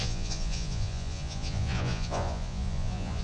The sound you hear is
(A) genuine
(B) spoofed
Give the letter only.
B